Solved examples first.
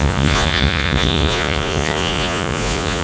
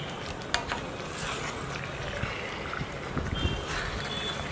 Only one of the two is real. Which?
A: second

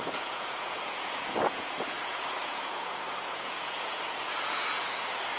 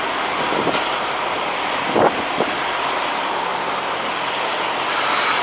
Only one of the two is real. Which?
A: second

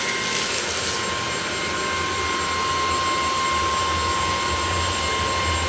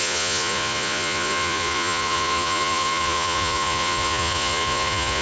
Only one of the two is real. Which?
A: first